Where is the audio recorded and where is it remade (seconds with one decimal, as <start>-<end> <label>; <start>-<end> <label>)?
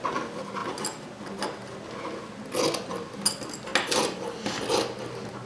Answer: 0.0-5.5 recorded